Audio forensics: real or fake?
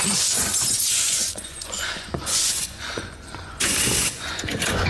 fake